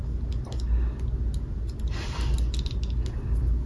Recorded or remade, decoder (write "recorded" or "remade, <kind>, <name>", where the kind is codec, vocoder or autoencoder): recorded